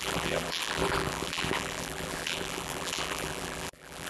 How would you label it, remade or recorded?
remade